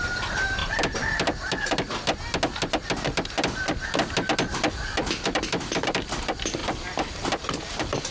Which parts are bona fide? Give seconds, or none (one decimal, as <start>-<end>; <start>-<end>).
0.6-4.7